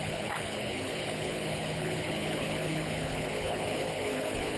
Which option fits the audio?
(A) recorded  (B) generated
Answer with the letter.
B